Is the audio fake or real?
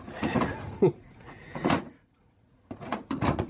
fake